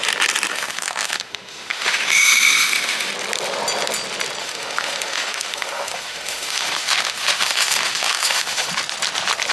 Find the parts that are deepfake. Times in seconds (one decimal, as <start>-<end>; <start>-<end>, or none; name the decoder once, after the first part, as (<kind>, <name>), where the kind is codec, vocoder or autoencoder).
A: 0.5-3.1 (autoencoder, DAC-VAE); 4.4-8.7